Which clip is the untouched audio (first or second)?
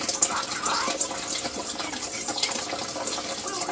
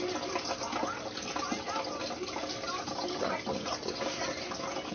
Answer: second